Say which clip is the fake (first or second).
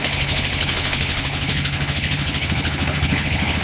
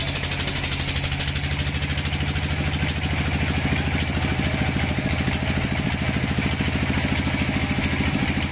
first